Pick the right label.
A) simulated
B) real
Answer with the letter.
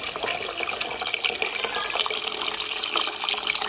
B